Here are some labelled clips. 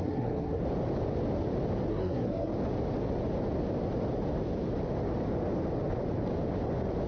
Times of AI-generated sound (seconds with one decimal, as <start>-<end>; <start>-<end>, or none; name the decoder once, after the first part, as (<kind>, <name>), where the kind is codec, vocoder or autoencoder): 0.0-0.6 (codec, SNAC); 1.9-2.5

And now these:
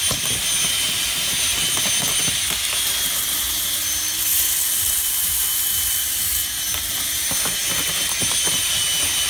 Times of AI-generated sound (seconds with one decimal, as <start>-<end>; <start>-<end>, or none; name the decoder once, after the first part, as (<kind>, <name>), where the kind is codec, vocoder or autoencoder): none

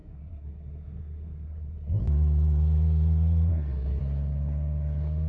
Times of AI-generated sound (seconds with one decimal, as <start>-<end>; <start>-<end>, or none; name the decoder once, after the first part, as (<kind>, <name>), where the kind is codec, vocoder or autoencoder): 0.0-2.0 (codec, SNAC); 3.5-4.0